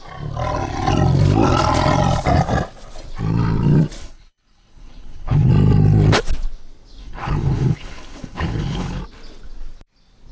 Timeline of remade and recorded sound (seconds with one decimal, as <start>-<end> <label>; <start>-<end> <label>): 0.0-4.0 recorded; 4.0-5.5 remade; 5.5-7.0 recorded; 7.0-9.0 remade; 9.0-10.3 recorded

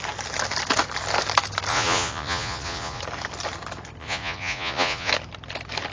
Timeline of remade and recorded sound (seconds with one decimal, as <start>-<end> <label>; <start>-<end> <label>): 0.0-1.7 recorded; 1.7-3.0 remade; 3.0-4.0 recorded; 4.0-5.1 remade; 5.1-5.9 recorded

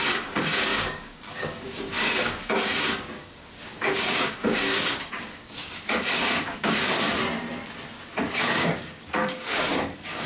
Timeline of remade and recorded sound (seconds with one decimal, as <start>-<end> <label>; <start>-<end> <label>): 0.0-7.2 remade; 7.2-8.3 recorded; 8.3-10.3 remade

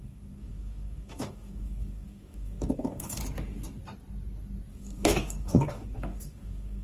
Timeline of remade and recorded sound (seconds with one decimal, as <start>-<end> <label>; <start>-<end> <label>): 0.0-3.2 remade; 3.2-4.7 recorded; 4.7-6.8 remade

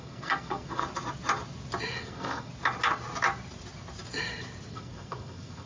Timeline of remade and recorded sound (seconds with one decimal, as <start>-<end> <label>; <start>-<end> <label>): 0.0-0.8 remade; 0.8-2.0 recorded; 2.0-2.5 remade; 2.5-4.7 recorded; 4.7-5.7 remade

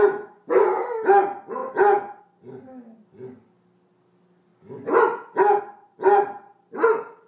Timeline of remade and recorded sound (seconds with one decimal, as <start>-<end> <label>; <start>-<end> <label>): 0.0-7.3 recorded

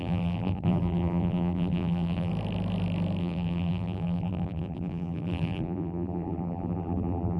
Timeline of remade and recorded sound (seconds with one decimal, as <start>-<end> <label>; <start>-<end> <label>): 0.0-2.3 remade; 2.3-3.2 recorded; 3.2-7.4 remade

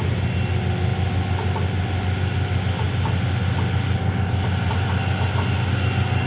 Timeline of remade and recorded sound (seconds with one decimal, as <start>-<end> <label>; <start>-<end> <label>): 0.0-6.3 recorded